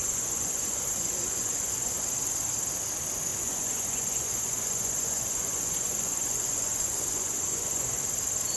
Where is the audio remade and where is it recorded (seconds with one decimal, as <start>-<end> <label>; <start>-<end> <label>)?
0.0-2.0 remade; 2.0-3.3 recorded; 3.3-8.0 remade; 8.0-8.6 recorded